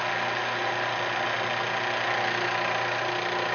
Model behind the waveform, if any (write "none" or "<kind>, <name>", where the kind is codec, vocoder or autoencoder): none